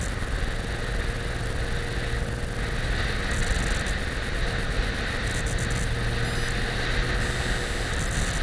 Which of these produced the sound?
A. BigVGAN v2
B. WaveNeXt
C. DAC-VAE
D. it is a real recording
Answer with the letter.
D